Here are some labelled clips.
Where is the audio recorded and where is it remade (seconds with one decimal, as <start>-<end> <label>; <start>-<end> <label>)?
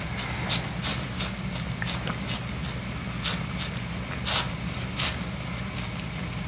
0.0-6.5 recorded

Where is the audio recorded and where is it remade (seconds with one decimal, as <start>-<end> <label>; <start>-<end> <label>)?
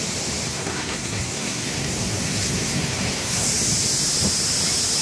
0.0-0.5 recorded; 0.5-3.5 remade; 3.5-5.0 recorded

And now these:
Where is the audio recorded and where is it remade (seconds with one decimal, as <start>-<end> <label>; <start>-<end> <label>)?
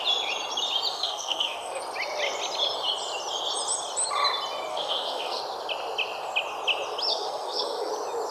0.0-0.9 recorded; 0.9-1.8 remade; 1.8-4.7 recorded; 4.7-5.4 remade; 5.4-7.1 recorded; 7.1-7.9 remade; 7.9-8.3 recorded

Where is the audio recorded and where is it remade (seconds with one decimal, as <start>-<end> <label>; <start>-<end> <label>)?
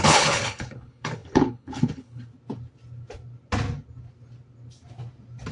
0.0-2.3 remade; 2.3-5.5 recorded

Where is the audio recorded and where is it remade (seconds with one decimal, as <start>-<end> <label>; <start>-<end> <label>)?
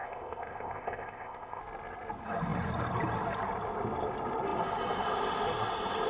0.0-1.6 remade; 1.6-6.1 recorded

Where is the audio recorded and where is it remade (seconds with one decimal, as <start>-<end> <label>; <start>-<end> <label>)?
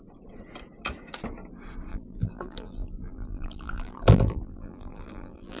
0.0-1.9 recorded; 1.9-5.6 remade